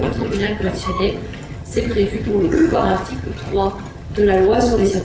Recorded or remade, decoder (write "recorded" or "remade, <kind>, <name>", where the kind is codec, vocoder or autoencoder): remade, vocoder, HiFi-GAN